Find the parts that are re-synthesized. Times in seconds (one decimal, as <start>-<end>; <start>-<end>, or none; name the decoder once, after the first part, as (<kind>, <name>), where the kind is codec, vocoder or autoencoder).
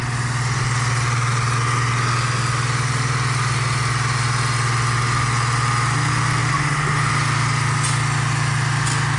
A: none